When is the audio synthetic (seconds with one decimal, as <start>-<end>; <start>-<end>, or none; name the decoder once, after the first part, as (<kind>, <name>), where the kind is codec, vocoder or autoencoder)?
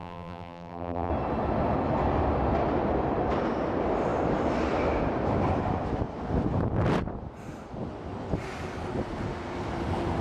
0.0-1.1 (vocoder, BigVGAN v2)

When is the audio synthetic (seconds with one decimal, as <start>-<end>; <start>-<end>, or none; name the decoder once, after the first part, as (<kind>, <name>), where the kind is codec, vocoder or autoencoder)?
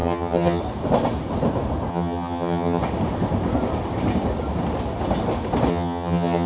0.0-0.6 (vocoder, HiFi-GAN); 1.9-2.8; 5.7-6.5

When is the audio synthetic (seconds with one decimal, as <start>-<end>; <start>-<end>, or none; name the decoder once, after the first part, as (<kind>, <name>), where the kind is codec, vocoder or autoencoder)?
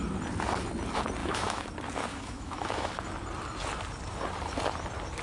1.2-1.7 (autoencoder, DAC-VAE); 2.1-2.9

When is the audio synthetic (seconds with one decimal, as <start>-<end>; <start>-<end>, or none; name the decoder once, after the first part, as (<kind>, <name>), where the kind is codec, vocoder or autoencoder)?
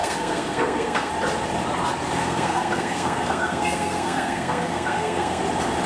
0.0-1.1 (codec, SNAC); 2.2-5.4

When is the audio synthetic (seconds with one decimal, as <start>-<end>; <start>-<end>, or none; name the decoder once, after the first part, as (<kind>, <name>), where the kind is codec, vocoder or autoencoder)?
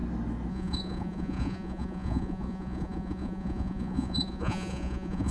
0.5-5.3 (vocoder, Vocos)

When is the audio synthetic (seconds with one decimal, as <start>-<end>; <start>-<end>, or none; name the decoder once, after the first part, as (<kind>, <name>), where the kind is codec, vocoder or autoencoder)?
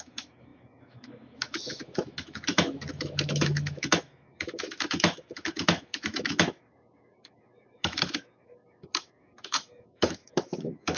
0.0-11.0 (autoencoder, DAC-VAE)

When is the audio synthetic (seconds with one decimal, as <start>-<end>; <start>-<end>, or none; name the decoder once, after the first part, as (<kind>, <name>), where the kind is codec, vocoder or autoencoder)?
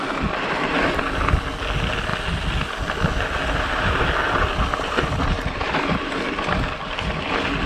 none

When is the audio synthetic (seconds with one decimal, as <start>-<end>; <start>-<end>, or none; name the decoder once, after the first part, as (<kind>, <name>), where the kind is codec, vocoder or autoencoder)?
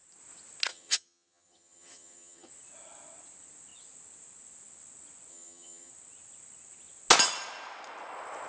0.7-2.5 (vocoder, HiFi-GAN); 5.3-5.9